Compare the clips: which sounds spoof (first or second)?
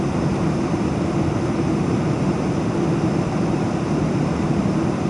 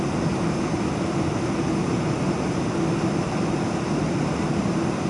first